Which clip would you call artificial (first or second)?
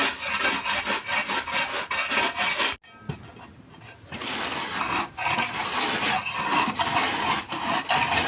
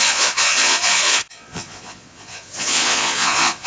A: second